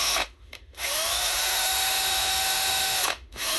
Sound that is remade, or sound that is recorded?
remade